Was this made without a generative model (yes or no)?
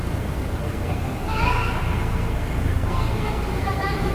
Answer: no